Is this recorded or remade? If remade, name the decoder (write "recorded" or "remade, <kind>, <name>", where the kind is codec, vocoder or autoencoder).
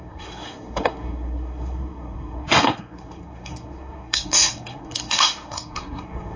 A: remade, codec, SNAC